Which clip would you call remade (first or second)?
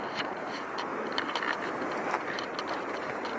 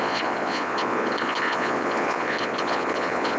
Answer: second